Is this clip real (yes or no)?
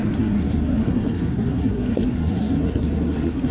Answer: no